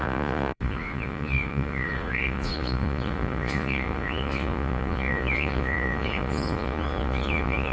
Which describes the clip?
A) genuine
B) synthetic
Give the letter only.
B